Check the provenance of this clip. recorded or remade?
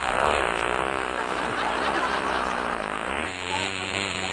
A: remade